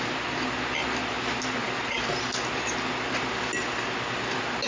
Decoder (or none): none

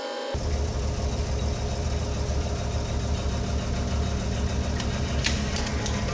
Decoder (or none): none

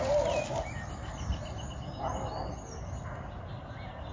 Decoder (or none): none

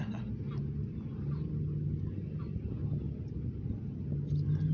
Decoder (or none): none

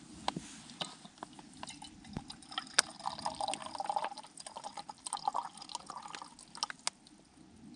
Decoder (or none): none